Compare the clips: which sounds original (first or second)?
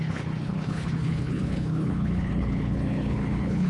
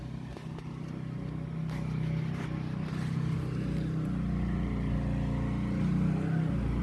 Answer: second